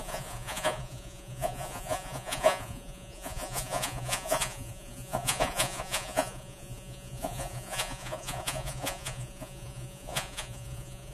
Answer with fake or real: fake